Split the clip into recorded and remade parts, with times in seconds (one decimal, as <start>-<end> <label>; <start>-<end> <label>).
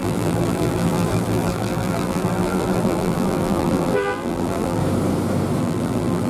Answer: 0.0-4.8 remade; 4.8-5.6 recorded; 5.6-6.3 remade